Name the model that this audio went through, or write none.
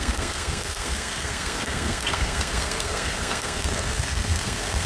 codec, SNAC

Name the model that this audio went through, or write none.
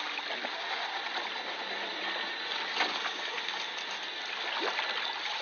none